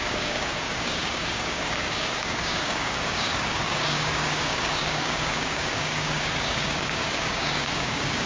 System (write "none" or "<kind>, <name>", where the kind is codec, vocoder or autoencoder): codec, DAC